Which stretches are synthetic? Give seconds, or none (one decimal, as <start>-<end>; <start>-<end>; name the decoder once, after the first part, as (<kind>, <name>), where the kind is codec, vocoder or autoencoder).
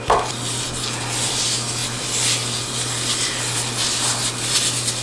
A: none